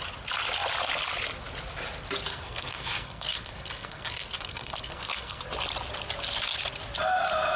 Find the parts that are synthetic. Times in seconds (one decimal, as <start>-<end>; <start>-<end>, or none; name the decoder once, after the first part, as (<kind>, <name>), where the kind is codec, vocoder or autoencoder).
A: 2.3-5.4 (codec, SNAC)